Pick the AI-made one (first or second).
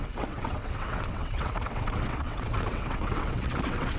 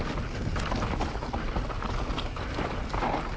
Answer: first